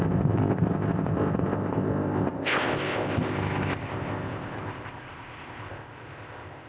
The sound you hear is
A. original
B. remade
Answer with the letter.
B